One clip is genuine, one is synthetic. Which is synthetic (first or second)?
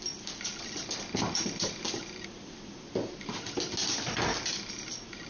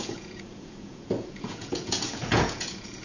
second